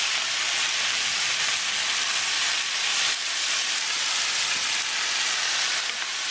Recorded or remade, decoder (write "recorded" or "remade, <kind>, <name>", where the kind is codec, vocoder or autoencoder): recorded